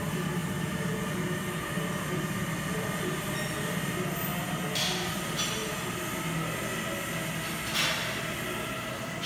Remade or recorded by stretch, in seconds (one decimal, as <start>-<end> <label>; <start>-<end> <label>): 0.0-9.3 recorded